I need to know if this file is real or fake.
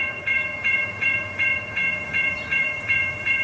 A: fake